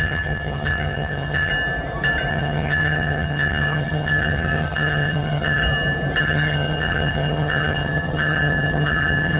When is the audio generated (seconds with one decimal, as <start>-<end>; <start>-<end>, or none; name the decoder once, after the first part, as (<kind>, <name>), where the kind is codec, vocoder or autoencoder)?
0.0-1.5 (vocoder, HiFi-GAN); 2.3-5.6; 6.2-9.4